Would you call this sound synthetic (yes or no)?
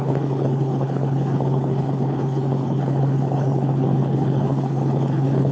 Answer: yes